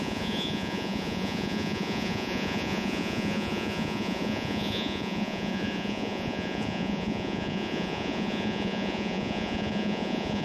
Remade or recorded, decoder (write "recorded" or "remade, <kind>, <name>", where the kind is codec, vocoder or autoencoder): remade, vocoder, Vocos